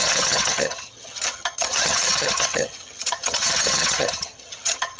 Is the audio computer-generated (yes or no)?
yes